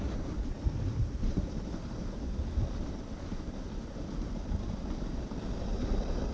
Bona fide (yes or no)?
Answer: yes